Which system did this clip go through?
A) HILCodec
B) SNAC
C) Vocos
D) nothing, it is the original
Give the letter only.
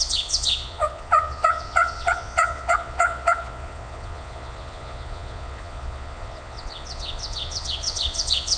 C